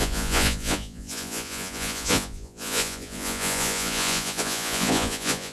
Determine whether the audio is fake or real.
fake